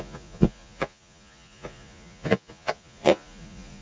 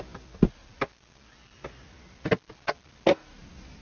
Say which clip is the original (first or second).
second